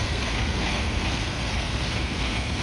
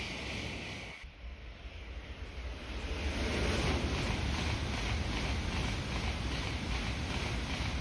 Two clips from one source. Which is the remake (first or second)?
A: first